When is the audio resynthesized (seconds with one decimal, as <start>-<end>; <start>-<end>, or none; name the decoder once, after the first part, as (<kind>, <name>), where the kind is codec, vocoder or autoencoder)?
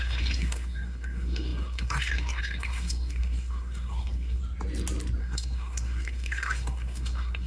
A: 0.0-4.4 (codec, SNAC); 5.2-7.5